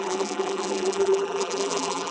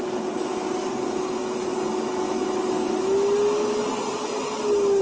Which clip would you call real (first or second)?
second